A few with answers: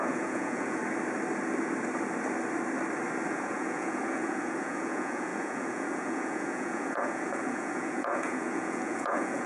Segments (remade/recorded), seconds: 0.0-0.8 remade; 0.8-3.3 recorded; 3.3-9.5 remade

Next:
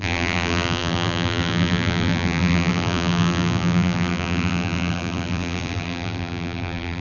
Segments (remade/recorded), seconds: 0.0-7.0 remade

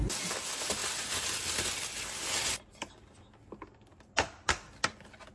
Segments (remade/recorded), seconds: 0.0-5.3 recorded

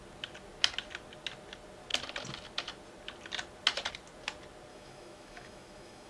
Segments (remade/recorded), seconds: 0.0-4.7 recorded; 4.7-6.1 remade